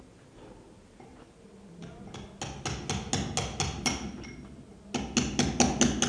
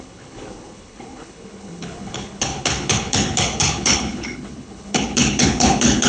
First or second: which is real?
first